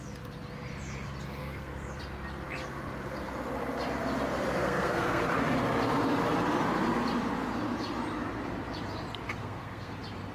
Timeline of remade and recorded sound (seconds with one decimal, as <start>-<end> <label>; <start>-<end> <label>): 0.0-1.4 recorded; 1.4-2.0 remade; 2.0-4.6 recorded; 4.6-5.2 remade; 5.2-9.4 recorded; 9.4-9.9 remade; 9.9-10.3 recorded